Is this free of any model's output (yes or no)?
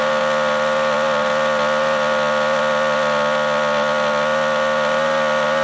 yes